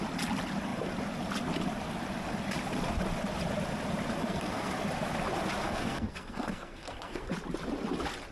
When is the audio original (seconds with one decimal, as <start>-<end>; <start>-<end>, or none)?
0.0-4.2; 4.7-5.6; 7.3-8.3

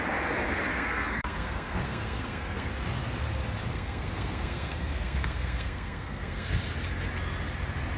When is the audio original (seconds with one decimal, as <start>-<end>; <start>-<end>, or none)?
0.0-0.7; 2.7-3.7; 6.6-8.0

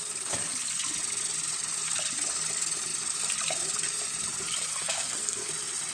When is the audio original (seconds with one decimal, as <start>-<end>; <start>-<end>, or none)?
0.0-4.7; 5.5-5.9

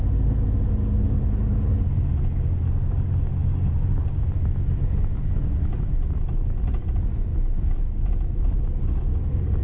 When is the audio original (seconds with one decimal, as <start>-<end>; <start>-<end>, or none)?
0.0-9.6

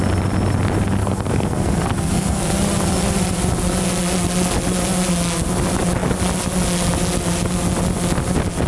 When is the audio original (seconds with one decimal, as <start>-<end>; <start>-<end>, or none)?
0.0-1.0; 2.5-8.7